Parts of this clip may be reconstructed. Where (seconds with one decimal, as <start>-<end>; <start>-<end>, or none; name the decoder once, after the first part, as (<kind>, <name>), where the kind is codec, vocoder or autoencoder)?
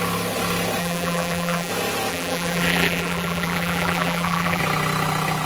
0.8-1.7 (vocoder, BigVGAN v2); 2.1-4.6